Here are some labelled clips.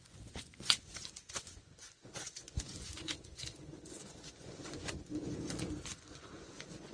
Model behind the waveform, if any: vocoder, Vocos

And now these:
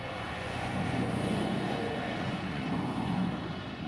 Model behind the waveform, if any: vocoder, Vocos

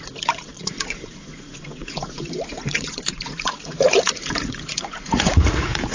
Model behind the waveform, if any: vocoder, Vocos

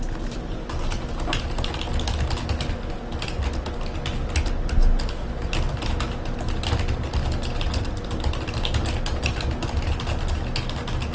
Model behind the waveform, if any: none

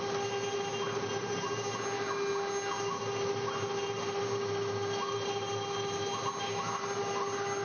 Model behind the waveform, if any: none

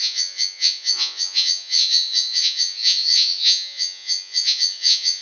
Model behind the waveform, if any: vocoder, Vocos